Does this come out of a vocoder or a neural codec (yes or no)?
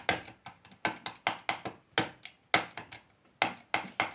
no